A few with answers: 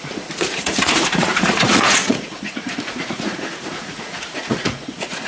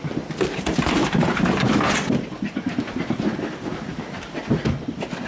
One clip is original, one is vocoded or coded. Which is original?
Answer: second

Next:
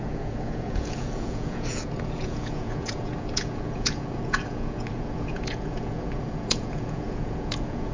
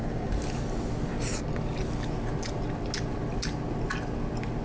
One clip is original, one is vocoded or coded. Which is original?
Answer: second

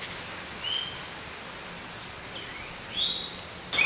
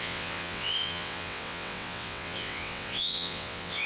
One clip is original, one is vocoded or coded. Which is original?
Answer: first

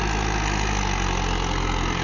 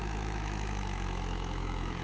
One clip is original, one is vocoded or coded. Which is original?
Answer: first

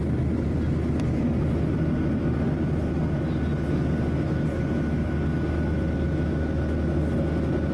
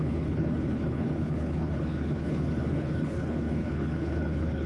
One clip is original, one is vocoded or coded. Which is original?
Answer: first